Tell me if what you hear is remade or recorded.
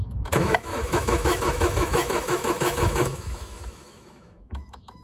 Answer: remade